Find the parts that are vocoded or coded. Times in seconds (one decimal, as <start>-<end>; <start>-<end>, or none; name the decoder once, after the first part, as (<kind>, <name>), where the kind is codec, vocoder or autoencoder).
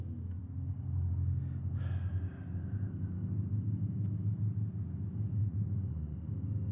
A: 5.4-6.3 (vocoder, Vocos)